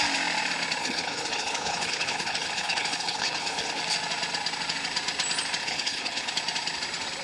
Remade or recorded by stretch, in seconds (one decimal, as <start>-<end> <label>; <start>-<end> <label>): 0.0-0.8 recorded; 0.8-3.8 remade; 3.8-5.6 recorded; 5.6-6.3 remade; 6.3-7.2 recorded